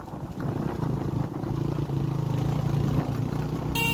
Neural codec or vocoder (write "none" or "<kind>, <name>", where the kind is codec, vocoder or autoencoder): none